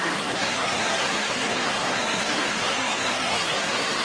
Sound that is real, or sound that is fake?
fake